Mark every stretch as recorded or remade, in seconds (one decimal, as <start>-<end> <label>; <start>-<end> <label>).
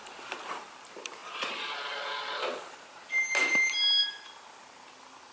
0.0-1.2 recorded; 1.2-2.6 remade; 2.6-5.3 recorded